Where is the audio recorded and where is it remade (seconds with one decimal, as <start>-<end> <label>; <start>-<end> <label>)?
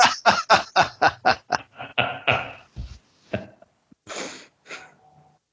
0.0-5.5 recorded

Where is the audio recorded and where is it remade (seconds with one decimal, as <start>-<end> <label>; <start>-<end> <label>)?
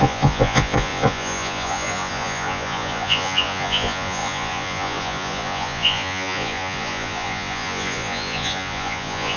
0.0-9.4 remade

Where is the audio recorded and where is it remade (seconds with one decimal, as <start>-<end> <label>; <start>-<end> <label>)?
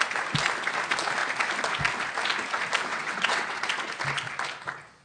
0.0-2.9 recorded; 2.9-3.6 remade; 3.6-5.0 recorded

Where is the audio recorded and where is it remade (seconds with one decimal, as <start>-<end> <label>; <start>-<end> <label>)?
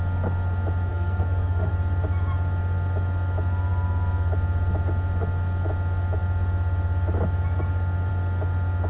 0.0-0.9 recorded; 0.9-1.7 remade; 1.7-8.9 recorded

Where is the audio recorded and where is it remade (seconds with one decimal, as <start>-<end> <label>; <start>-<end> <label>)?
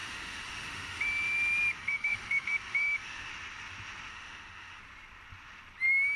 0.0-1.0 remade; 1.0-1.8 recorded; 1.8-3.3 remade; 3.3-4.1 recorded; 4.1-4.8 remade; 4.8-6.2 recorded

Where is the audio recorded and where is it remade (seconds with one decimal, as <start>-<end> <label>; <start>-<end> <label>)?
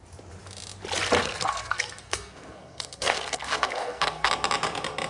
0.0-1.2 recorded; 1.2-4.3 remade; 4.3-5.1 recorded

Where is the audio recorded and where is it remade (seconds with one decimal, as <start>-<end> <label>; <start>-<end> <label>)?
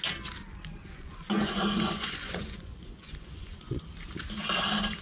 0.0-0.8 recorded; 0.8-3.8 remade; 3.8-5.0 recorded